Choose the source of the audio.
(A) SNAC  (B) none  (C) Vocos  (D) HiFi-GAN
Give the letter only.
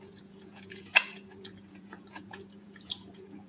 C